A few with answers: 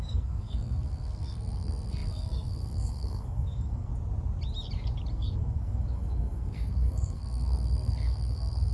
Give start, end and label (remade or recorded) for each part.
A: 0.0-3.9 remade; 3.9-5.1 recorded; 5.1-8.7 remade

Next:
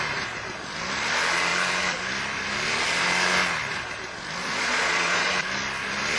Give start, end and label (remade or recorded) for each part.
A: 0.0-4.4 recorded; 4.4-5.3 remade; 5.3-6.2 recorded

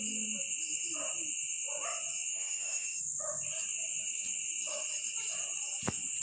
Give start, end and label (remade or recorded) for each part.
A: 0.0-2.3 recorded; 2.3-3.0 remade; 3.0-6.2 recorded

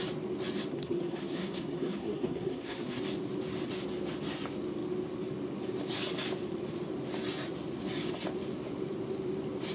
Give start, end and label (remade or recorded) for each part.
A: 0.0-0.7 recorded; 0.7-3.0 remade; 3.0-9.7 recorded

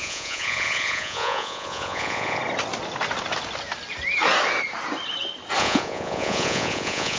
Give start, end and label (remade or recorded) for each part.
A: 0.0-2.4 remade; 2.4-5.6 recorded; 5.6-7.2 remade

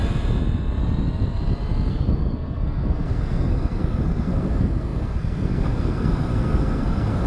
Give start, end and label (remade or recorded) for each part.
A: 0.0-1.9 recorded; 1.9-7.3 remade

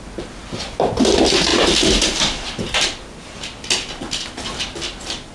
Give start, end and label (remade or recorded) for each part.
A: 0.0-1.5 recorded; 1.5-4.0 remade; 4.0-5.3 recorded